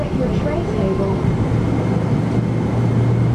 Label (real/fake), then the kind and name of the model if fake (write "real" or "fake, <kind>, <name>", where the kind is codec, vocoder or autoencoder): real